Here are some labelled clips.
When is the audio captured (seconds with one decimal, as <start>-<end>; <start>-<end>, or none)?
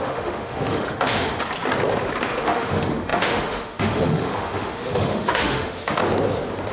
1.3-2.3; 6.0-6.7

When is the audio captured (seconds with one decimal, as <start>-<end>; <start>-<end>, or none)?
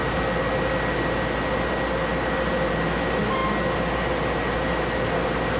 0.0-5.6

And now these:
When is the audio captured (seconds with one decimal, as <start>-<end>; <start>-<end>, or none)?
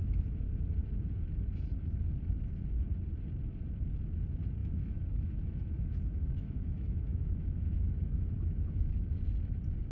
0.0-4.6; 9.1-9.9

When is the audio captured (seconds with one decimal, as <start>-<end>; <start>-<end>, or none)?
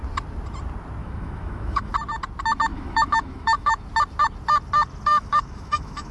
0.0-1.0; 1.9-2.7; 3.8-5.1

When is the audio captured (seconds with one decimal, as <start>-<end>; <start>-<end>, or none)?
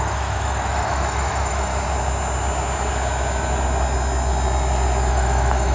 1.7-5.1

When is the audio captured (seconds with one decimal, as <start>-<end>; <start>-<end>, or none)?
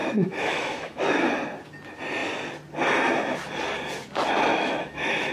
1.3-4.5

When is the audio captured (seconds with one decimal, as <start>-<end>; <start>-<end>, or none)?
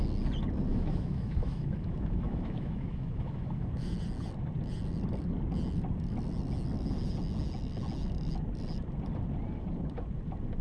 0.0-0.7; 3.9-10.6